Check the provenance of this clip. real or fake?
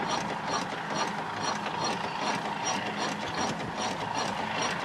real